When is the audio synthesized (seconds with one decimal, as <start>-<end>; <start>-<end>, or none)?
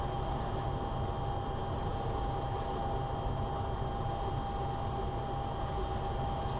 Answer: none